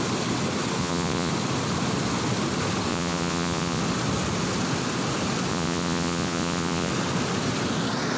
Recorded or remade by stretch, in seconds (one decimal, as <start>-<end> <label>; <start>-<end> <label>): 0.0-0.8 recorded; 0.8-1.3 remade; 1.3-2.9 recorded; 2.9-3.8 remade; 3.8-5.5 recorded; 5.5-6.9 remade; 6.9-8.2 recorded